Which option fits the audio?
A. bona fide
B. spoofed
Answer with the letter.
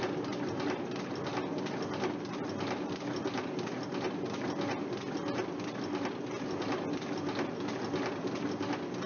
A